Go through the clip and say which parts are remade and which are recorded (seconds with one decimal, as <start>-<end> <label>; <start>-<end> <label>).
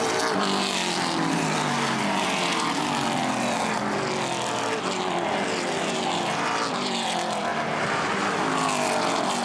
0.0-9.4 recorded